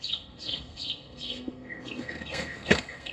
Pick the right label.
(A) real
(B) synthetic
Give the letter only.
B